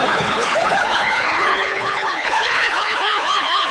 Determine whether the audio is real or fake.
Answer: fake